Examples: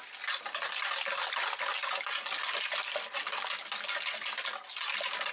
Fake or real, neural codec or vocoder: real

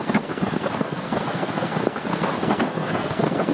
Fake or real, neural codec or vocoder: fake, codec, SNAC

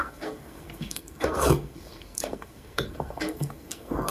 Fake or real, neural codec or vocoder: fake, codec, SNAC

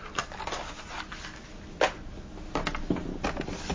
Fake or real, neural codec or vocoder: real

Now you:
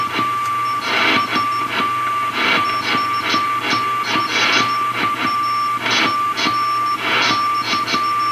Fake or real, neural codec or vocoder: real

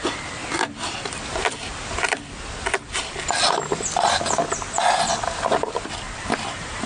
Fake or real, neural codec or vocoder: real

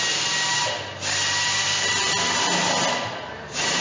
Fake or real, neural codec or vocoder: real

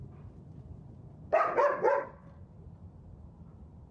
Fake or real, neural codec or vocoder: real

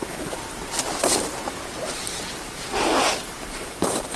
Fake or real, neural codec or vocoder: fake, vocoder, BigVGAN v2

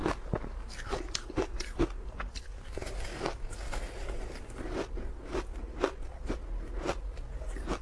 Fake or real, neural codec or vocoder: real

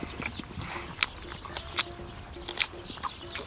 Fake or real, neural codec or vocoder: real